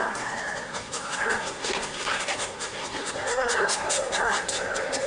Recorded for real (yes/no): no